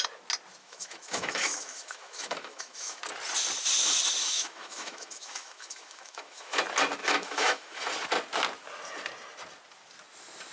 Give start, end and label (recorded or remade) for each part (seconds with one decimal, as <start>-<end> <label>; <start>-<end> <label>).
0.0-0.6 recorded; 0.6-3.0 remade; 3.0-4.2 recorded; 4.2-6.6 remade; 6.6-7.0 recorded; 7.0-7.8 remade; 7.8-10.5 recorded